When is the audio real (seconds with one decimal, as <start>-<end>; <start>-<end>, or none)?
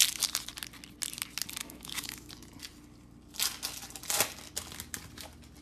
0.0-1.6; 2.3-5.6